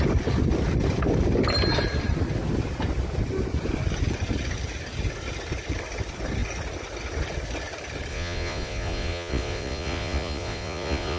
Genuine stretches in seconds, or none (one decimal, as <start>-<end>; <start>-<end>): 0.0-8.1

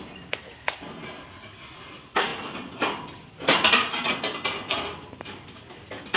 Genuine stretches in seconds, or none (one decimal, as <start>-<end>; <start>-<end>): 0.0-6.2

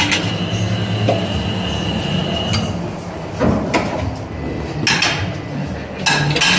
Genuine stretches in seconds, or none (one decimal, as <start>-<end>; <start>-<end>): 0.0-6.6

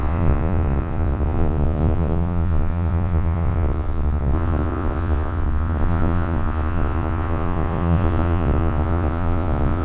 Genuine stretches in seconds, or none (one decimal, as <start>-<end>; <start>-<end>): none